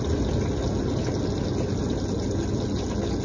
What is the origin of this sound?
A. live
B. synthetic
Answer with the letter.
A